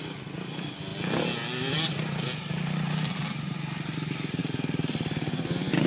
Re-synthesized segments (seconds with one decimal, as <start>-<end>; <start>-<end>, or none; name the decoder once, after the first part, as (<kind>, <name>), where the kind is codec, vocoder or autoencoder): none